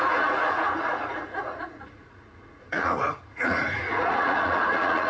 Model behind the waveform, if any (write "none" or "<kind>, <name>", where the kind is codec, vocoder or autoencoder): vocoder, Vocos